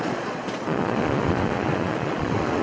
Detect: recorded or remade remade